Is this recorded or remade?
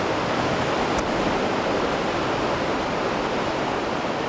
recorded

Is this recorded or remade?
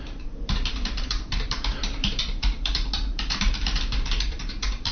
remade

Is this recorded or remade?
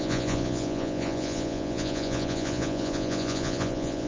remade